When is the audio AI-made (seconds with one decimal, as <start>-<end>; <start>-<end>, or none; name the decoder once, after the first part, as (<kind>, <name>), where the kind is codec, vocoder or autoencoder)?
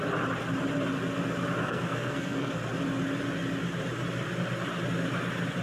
1.6-2.5 (codec, SNAC)